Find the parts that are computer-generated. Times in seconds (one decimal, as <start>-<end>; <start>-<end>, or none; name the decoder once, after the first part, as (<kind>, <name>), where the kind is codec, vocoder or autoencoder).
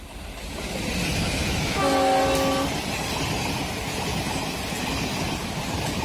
1.1-1.8 (autoencoder, DAC-VAE)